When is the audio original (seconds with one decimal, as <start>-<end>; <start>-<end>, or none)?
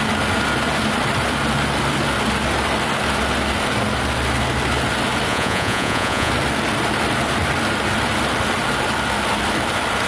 0.0-5.3; 6.3-10.1